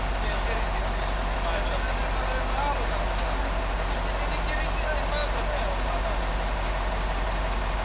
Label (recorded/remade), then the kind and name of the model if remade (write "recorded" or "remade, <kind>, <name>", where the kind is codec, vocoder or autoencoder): recorded